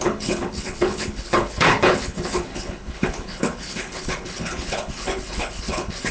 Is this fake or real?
fake